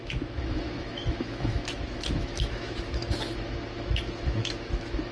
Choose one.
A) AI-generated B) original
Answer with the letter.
A